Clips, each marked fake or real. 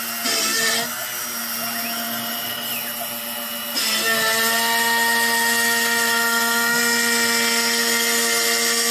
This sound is real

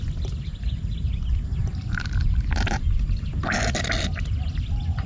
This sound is real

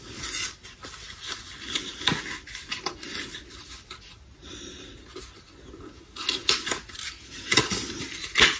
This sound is real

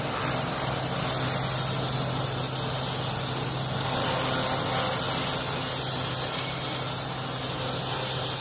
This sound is real